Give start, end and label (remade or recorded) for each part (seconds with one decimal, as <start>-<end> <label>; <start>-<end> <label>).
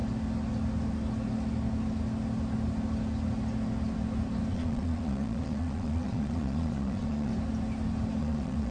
0.0-4.5 recorded; 4.5-7.3 remade; 7.3-8.2 recorded; 8.2-8.7 remade